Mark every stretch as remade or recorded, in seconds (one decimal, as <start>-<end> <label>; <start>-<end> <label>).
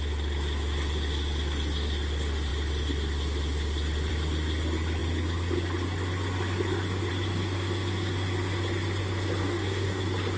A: 0.0-9.4 recorded; 9.4-10.0 remade; 10.0-10.4 recorded